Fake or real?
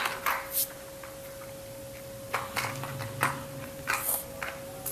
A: real